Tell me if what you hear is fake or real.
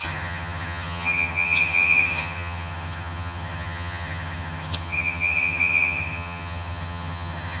fake